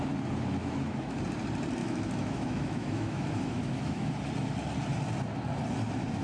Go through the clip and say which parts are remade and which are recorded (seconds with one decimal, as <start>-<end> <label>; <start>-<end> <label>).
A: 0.0-0.6 recorded; 0.6-1.2 remade; 1.2-1.8 recorded; 1.8-4.1 remade; 4.1-6.2 recorded